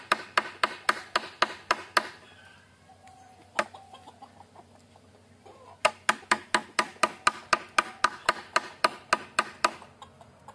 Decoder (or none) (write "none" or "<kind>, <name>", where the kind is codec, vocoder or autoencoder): none